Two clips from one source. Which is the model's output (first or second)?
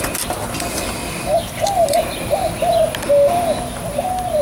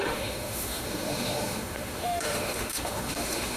second